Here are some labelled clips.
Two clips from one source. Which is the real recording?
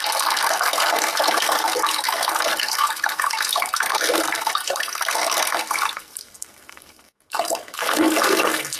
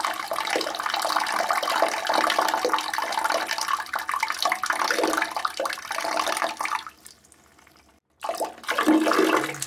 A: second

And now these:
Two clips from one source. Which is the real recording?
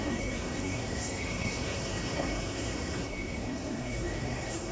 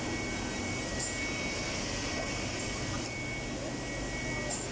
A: second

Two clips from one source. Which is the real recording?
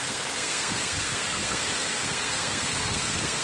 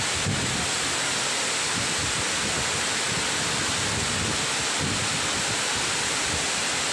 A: second